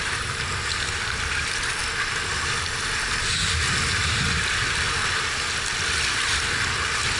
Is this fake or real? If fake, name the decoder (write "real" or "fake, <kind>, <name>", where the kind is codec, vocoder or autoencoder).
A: real